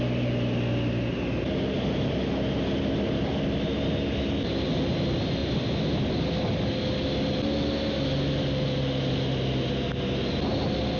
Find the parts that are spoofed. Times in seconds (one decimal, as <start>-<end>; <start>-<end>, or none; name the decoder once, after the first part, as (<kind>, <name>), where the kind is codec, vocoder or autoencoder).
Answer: none